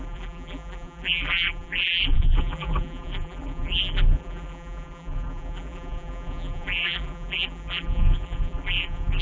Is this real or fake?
fake